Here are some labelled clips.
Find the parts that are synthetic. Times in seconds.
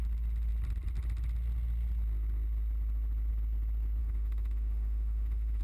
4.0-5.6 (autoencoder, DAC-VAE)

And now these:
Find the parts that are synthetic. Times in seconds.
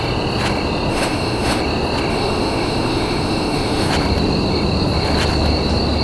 0.9-1.6 (autoencoder, DAC-VAE); 2.1-3.9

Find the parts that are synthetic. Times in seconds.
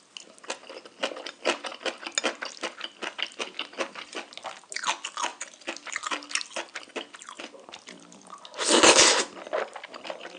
none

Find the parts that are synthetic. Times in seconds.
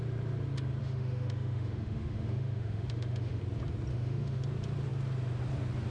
0.8-3.4 (autoencoder, DAC-VAE); 3.9-4.4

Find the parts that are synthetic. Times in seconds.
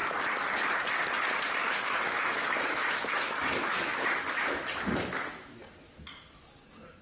1.6-5.6 (autoencoder, DAC-VAE)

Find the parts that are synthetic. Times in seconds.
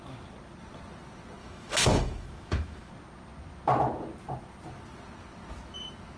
1.4-2.9 (autoencoder, DAC-VAE)